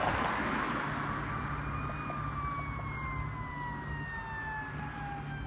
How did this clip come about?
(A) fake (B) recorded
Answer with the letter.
B